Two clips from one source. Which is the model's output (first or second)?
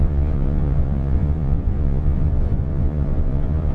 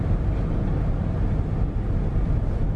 first